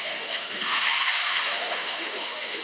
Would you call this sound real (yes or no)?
no